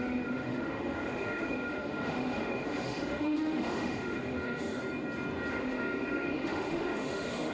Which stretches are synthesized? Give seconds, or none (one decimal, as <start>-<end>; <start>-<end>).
0.0-4.8; 5.5-7.5